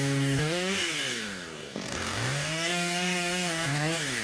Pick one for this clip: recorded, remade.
remade